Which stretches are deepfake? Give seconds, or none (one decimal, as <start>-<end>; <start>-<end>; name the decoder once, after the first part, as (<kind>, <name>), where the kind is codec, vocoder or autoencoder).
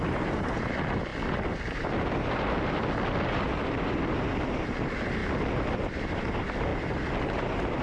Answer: 0.0-1.1 (vocoder, BigVGAN v2); 4.8-5.2; 6.2-6.7; 7.2-7.8